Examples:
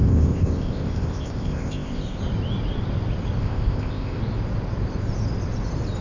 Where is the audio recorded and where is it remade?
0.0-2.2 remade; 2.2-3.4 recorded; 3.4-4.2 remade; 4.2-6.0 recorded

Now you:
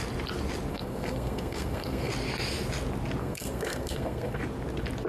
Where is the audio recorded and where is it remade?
0.0-0.7 recorded; 0.7-2.1 remade; 2.1-3.2 recorded; 3.2-4.4 remade; 4.4-5.1 recorded

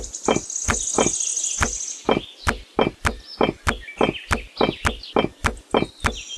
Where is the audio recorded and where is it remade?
0.0-6.4 recorded

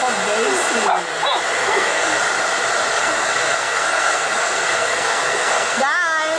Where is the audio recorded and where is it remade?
0.0-1.6 recorded; 1.6-2.2 remade; 2.2-2.9 recorded; 2.9-5.8 remade; 5.8-6.4 recorded

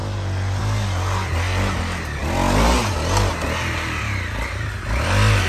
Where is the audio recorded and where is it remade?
0.0-5.5 recorded

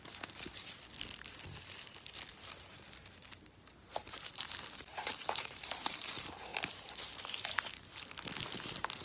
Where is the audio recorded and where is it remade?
0.0-2.3 recorded; 2.3-6.1 remade; 6.1-6.5 recorded; 6.5-7.1 remade; 7.1-9.0 recorded

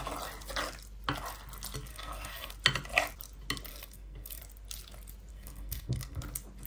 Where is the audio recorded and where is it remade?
0.0-1.9 recorded; 1.9-2.5 remade; 2.5-3.7 recorded; 3.7-4.4 remade; 4.4-5.3 recorded; 5.3-6.2 remade; 6.2-6.7 recorded